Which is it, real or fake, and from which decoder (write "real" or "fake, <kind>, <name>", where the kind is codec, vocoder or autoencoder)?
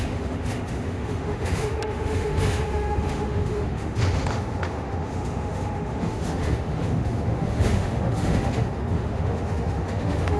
fake, autoencoder, DAC-VAE